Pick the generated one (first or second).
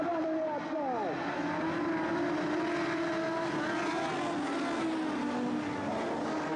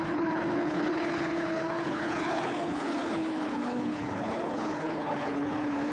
second